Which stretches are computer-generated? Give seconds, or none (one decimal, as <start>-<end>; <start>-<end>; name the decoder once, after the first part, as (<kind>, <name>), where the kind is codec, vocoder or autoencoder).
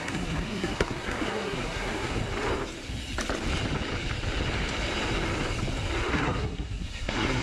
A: 0.0-2.2 (codec, SNAC); 6.1-7.4